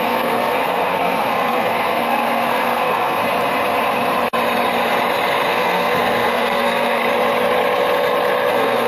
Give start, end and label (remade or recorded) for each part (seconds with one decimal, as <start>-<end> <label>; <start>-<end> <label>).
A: 0.0-3.2 remade; 3.2-5.5 recorded; 5.5-7.0 remade; 7.0-8.5 recorded; 8.5-8.9 remade